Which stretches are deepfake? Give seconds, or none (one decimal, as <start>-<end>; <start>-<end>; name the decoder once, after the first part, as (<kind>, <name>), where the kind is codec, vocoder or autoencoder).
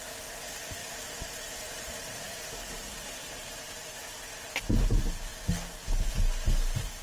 0.8-3.7 (vocoder, BigVGAN v2)